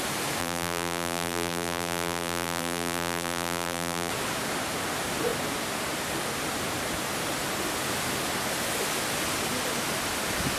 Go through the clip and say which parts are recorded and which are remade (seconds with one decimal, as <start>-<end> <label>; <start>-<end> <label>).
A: 0.0-0.4 recorded; 0.4-4.1 remade; 4.1-10.6 recorded